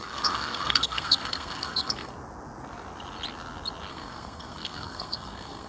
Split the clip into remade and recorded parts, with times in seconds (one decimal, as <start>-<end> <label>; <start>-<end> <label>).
0.0-2.1 remade; 2.1-3.9 recorded; 3.9-5.7 remade